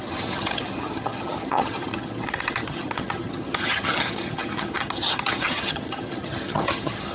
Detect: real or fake fake